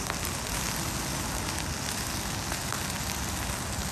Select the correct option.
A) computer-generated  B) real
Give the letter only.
B